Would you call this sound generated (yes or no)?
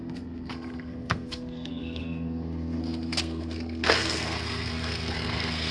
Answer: yes